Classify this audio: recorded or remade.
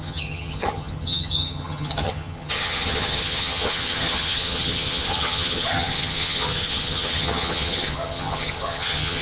remade